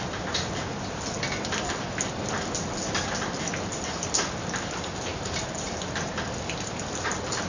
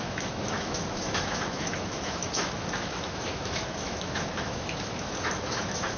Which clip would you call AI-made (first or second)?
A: second